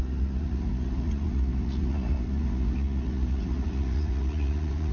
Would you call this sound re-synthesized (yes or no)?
yes